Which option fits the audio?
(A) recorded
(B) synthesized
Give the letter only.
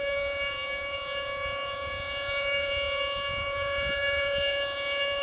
B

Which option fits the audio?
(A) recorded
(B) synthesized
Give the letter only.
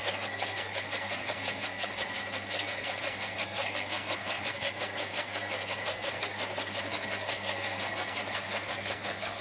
B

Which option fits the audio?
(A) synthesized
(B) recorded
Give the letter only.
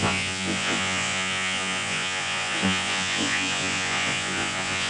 A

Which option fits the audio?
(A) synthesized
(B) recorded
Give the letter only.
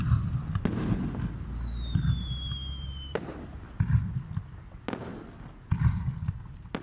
B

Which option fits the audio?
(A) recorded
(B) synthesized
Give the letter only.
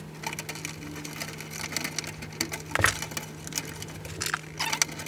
A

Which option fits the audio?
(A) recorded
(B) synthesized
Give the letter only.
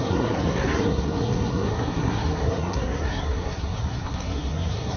B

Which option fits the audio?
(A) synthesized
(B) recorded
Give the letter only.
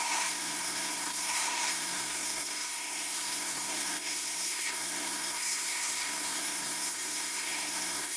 A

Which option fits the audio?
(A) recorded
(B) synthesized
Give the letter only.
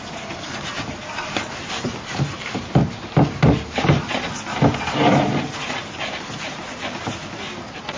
A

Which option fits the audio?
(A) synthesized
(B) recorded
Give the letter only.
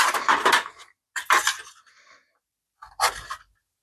B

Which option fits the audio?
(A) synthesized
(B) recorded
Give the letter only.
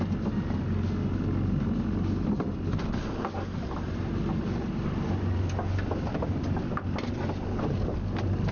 B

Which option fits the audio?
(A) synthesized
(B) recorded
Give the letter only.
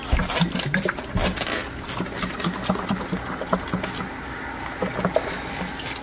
B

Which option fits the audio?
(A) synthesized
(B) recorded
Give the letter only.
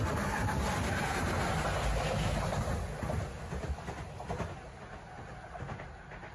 B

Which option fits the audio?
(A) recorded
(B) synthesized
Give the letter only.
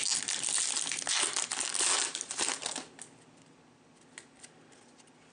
A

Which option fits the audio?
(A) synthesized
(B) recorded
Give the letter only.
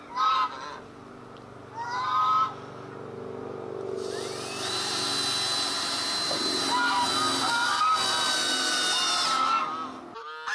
B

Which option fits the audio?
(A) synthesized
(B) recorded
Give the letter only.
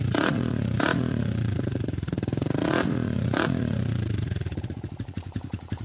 A